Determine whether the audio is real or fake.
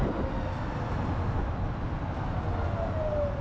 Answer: real